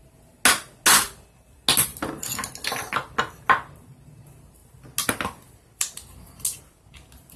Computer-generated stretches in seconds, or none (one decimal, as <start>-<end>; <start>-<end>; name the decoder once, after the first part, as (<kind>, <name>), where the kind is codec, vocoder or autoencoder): none

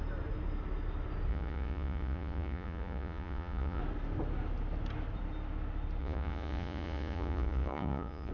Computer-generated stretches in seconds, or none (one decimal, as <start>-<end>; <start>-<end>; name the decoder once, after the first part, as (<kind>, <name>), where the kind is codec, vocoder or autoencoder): 1.3-3.8 (vocoder, Vocos); 6.0-8.3

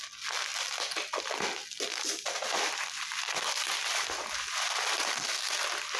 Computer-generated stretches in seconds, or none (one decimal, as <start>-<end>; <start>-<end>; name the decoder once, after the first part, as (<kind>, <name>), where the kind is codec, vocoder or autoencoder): 0.5-1.2 (vocoder, BigVGAN v2); 1.6-5.2

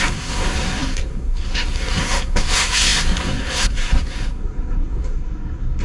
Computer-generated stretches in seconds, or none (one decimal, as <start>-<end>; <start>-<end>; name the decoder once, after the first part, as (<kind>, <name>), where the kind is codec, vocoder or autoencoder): 0.0-5.8 (codec, SNAC)

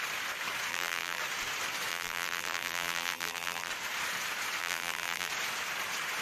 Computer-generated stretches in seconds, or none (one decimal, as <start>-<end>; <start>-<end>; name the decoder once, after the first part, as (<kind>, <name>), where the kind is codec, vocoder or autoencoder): 0.7-1.2 (vocoder, BigVGAN v2); 1.9-3.7; 4.6-5.3

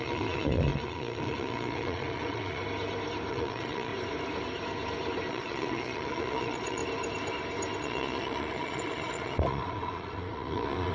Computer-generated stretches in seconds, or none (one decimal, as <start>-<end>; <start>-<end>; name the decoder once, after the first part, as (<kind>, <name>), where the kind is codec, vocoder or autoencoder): 0.0-2.6 (vocoder, Vocos); 3.3-3.9; 5.3-6.8; 7.8-10.9

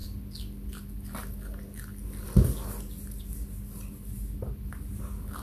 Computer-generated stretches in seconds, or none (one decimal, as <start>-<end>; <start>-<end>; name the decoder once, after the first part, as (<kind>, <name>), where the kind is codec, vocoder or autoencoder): none